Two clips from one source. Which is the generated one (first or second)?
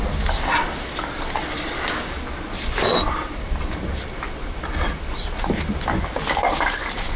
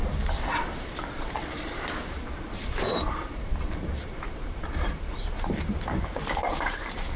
second